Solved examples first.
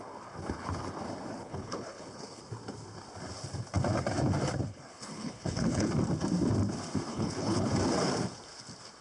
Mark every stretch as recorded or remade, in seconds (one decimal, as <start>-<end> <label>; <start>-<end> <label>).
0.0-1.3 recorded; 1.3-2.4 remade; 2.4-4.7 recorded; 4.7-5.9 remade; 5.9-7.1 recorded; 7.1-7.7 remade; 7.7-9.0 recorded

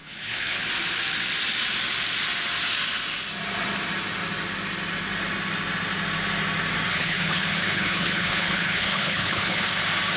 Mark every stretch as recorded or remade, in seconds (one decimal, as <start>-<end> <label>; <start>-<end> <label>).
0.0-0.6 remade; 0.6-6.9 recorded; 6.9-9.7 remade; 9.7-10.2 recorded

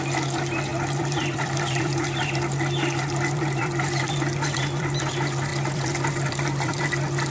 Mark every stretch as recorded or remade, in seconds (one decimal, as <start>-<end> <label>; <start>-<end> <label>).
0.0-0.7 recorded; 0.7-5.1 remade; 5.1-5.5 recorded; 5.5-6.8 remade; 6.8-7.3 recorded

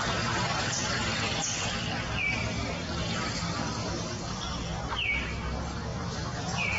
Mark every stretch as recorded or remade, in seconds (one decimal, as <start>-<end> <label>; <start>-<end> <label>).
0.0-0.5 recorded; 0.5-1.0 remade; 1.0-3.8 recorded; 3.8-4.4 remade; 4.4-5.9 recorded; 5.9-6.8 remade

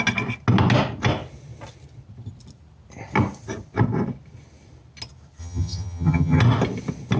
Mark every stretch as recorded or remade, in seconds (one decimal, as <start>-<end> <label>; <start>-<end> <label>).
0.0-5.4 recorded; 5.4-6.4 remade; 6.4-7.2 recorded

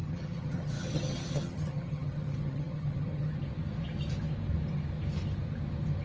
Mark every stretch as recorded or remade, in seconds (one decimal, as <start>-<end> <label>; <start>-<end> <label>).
0.0-3.4 remade; 3.4-6.0 recorded

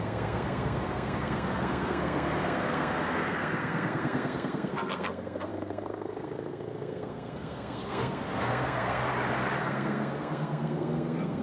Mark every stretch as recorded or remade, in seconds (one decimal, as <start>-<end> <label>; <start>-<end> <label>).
0.0-9.0 remade; 9.0-9.6 recorded; 9.6-11.4 remade

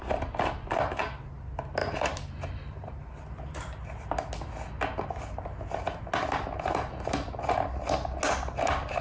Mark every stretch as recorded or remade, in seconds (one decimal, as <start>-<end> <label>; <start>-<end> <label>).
0.0-1.8 recorded; 1.8-3.1 remade; 3.1-9.0 recorded